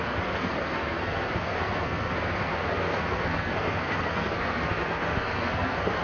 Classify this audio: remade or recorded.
remade